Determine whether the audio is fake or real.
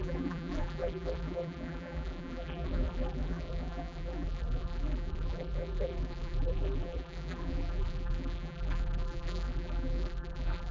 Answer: fake